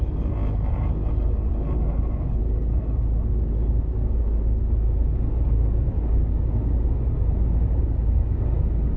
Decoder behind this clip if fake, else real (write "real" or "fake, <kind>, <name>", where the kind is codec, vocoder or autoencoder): real